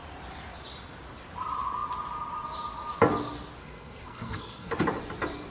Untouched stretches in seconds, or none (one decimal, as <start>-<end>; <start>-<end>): 0.0-3.6; 4.7-5.5